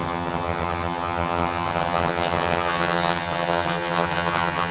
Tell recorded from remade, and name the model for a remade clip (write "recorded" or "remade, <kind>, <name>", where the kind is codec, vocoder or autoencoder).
remade, vocoder, HiFi-GAN